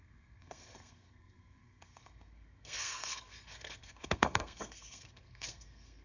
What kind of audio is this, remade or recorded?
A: remade